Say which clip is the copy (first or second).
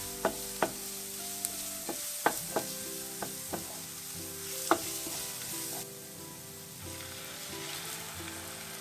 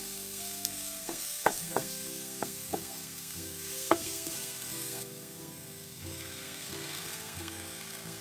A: second